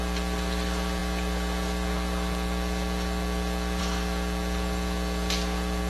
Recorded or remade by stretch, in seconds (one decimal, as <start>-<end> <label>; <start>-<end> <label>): 0.0-5.9 recorded